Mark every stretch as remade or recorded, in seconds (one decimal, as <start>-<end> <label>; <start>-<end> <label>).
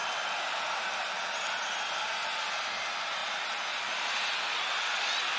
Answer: 0.0-5.4 recorded